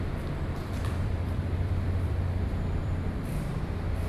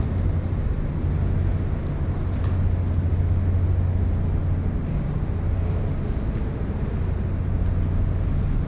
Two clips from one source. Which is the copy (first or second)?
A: first